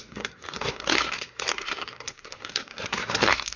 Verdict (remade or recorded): remade